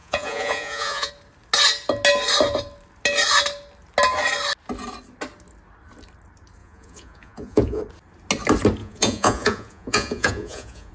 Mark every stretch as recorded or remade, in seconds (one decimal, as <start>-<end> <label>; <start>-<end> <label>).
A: 0.0-1.1 remade; 1.1-6.6 recorded; 6.6-7.8 remade; 7.8-8.8 recorded; 8.8-10.9 remade